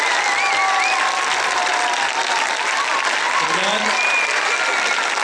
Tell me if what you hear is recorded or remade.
recorded